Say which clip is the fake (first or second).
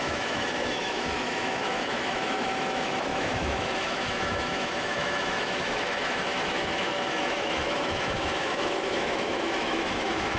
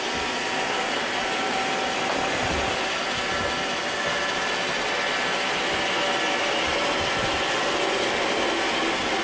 first